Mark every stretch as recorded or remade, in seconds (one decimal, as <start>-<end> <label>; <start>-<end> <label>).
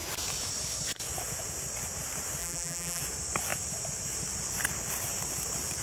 0.0-2.4 recorded; 2.4-3.0 remade; 3.0-5.8 recorded